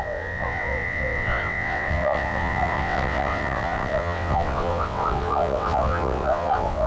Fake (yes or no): yes